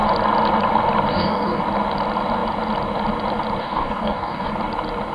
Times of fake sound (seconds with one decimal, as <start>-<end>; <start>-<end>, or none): 1.1-1.6; 3.6-4.5